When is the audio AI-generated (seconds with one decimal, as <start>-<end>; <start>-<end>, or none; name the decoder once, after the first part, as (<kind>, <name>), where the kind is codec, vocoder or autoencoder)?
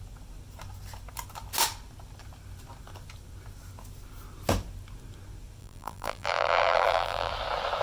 5.6-7.3 (vocoder, BigVGAN v2)